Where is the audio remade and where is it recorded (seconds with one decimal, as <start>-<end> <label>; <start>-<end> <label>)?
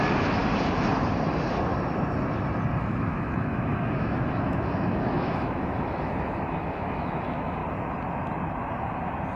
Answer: 0.0-0.4 remade; 0.4-2.8 recorded; 2.8-7.6 remade; 7.6-9.4 recorded